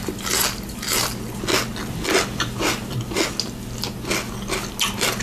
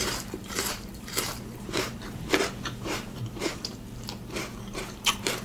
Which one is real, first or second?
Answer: first